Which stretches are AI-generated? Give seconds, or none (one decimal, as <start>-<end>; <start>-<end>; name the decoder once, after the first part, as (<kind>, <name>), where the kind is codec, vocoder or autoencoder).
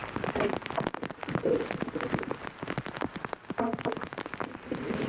none